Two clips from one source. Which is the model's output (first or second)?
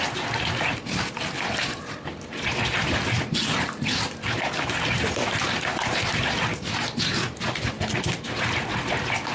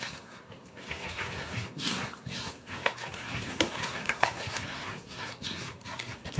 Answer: second